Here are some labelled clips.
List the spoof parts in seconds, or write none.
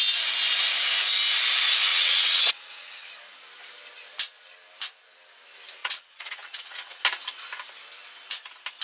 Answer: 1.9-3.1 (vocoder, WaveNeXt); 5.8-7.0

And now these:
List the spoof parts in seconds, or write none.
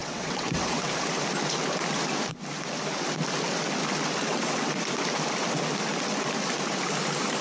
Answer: 0.0-0.9 (vocoder, WaveNeXt); 4.2-4.7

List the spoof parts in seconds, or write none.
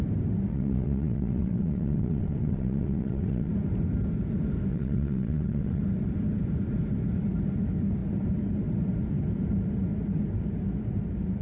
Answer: 0.5-3.5 (vocoder, WaveNeXt); 4.7-5.8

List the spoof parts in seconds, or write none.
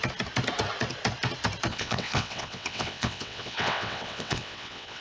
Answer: 1.7-5.0 (vocoder, WaveNeXt)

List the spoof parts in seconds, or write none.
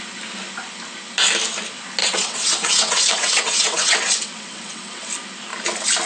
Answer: 2.0-5.1 (vocoder, WaveNeXt)